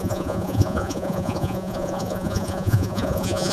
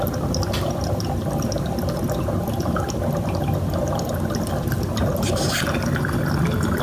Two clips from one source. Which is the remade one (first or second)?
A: first